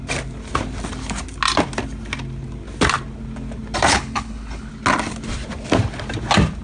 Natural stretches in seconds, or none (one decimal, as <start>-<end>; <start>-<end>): 0.0-3.9; 4.7-6.6